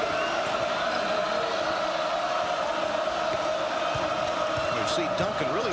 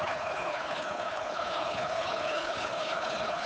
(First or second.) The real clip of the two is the first